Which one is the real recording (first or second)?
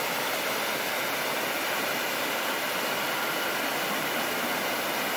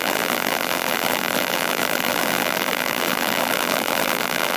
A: first